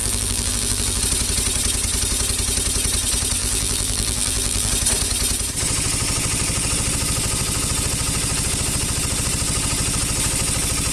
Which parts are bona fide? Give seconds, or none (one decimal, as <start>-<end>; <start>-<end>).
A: 1.0-3.4; 4.7-10.9